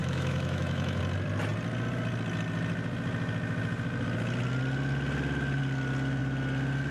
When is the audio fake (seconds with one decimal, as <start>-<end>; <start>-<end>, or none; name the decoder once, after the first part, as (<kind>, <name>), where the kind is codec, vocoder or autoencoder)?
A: 0.0-1.0 (autoencoder, DAC-VAE)